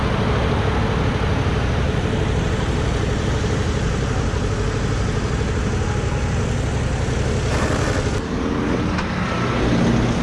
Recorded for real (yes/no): yes